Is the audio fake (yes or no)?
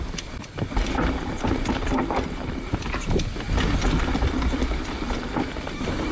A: no